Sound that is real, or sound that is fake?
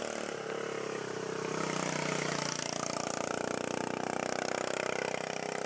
real